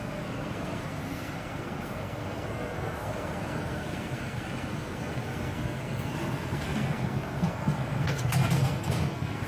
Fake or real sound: fake